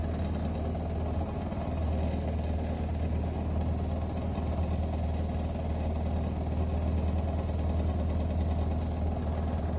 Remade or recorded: recorded